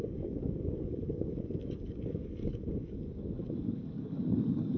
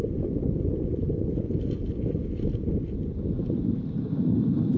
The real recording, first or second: second